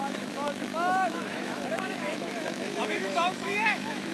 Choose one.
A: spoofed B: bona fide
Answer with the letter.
A